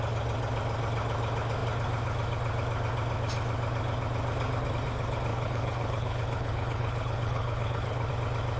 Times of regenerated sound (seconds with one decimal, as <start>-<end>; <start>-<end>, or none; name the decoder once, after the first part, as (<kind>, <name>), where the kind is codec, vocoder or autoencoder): 5.3-8.1 (codec, HILCodec)